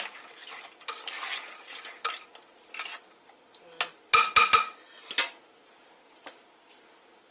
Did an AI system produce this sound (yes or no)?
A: no